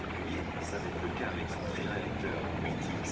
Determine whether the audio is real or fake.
real